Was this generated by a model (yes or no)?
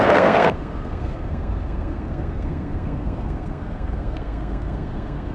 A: yes